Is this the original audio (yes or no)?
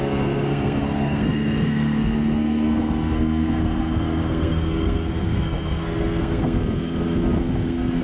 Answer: no